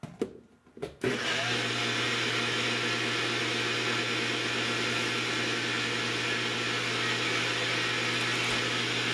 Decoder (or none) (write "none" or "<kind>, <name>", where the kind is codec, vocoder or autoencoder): none